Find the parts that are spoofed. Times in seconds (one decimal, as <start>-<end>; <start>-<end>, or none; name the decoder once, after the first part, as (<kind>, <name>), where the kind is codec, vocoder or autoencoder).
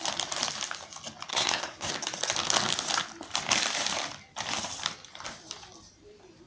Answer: 1.3-1.9 (codec, SNAC)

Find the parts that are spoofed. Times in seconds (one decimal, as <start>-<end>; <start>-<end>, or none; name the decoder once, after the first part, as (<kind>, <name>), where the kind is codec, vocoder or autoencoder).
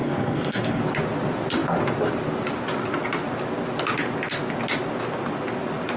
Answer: 0.0-0.8 (codec, SNAC)